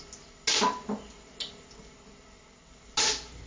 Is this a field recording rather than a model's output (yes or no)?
yes